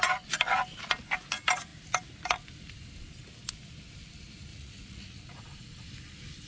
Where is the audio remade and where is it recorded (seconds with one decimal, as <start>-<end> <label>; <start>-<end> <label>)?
0.0-4.5 recorded; 4.5-5.2 remade; 5.2-6.5 recorded